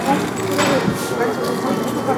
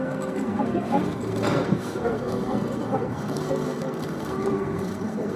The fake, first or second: second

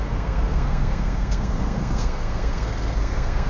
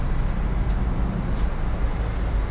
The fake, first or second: first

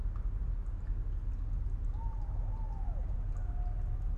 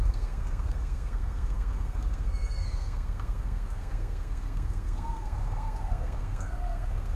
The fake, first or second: second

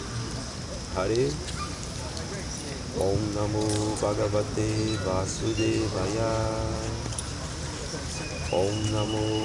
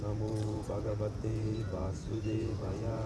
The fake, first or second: second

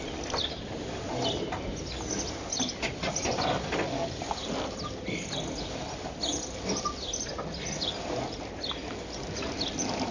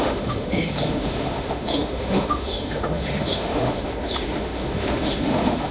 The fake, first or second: second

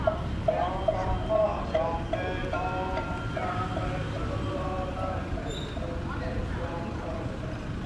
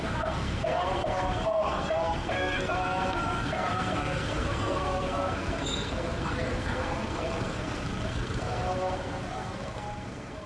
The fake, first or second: second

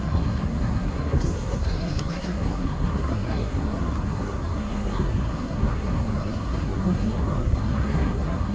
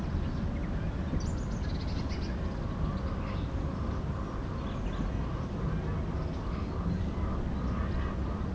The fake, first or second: first